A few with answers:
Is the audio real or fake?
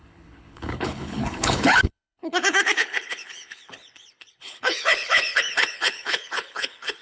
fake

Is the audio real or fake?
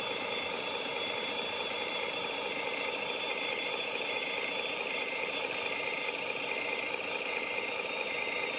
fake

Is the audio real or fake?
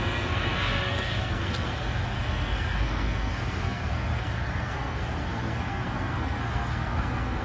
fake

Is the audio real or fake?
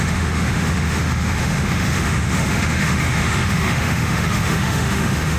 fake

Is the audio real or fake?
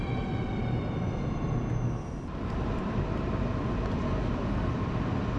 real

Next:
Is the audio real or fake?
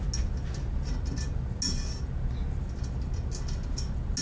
real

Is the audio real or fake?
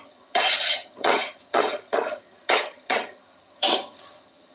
fake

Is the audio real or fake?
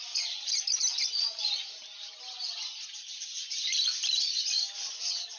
real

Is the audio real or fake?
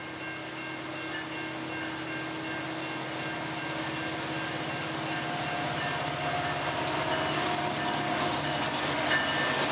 real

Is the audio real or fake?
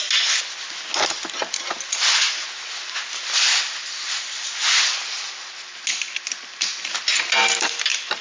real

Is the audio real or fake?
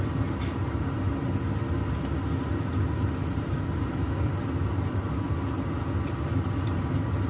real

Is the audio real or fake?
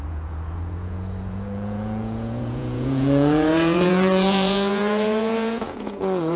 fake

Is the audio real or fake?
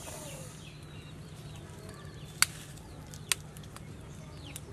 real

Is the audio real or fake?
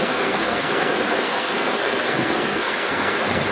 fake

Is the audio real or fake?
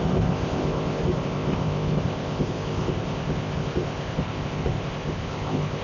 fake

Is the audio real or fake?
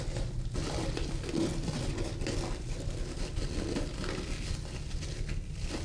real